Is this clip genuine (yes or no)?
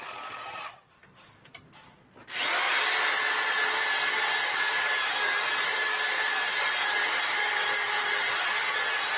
yes